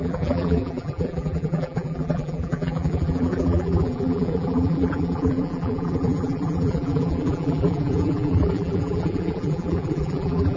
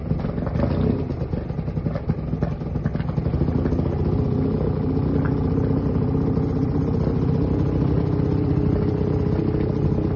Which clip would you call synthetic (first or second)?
first